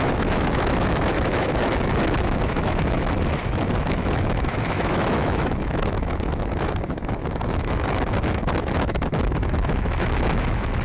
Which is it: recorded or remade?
remade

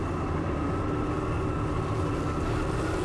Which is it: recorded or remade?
recorded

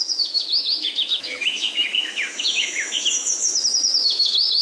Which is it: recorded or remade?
remade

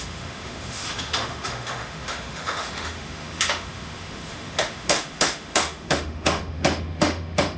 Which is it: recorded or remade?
remade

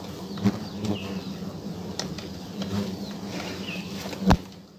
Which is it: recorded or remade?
recorded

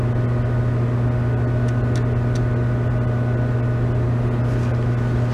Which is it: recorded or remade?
recorded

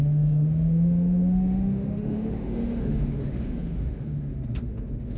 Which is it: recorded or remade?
remade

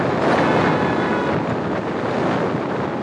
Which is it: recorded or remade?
recorded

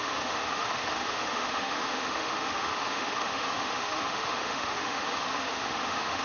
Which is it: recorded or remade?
remade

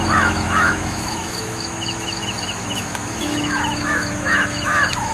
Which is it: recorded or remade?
remade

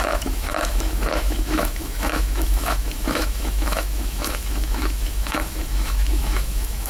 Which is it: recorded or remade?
remade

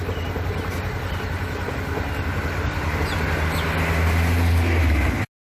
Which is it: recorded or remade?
recorded